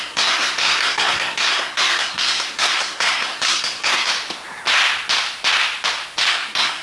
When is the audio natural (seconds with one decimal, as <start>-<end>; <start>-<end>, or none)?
4.1-6.3